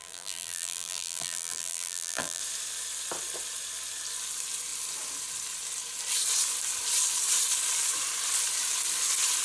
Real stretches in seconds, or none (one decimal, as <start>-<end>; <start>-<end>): 2.4-9.4